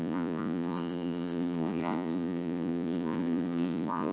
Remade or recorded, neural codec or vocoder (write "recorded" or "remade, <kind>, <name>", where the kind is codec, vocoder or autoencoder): remade, vocoder, Vocos